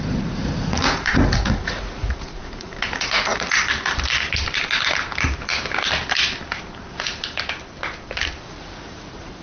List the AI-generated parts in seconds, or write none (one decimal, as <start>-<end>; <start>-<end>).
0.0-3.6; 8.5-9.4